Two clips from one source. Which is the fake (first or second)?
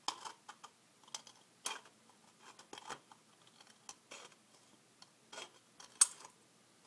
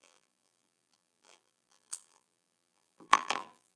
second